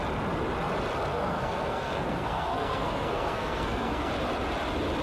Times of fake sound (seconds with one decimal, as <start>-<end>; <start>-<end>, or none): 1.1-4.1